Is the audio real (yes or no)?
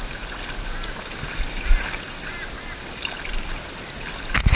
yes